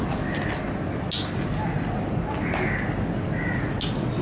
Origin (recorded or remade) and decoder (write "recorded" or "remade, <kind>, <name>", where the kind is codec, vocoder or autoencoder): recorded